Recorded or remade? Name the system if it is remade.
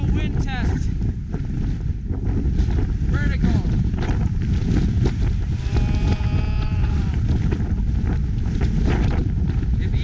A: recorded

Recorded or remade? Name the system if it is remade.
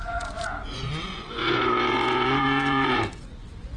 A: remade, vocoder, Vocos